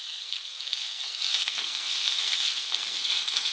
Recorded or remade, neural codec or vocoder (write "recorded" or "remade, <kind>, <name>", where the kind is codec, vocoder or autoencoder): remade, codec, SNAC